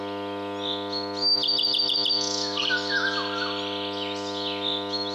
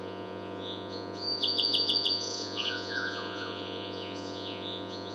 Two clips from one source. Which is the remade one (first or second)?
second